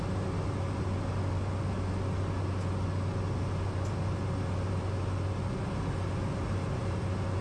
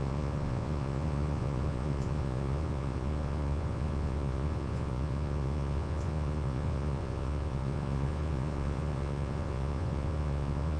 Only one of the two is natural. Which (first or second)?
first